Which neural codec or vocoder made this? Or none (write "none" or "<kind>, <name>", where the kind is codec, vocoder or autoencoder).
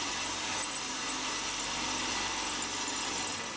none